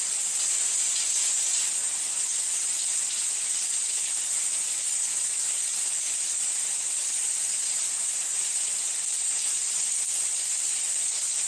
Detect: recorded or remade remade